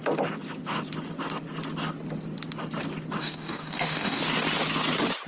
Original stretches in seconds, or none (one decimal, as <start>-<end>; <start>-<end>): 0.0-3.2; 4.2-5.3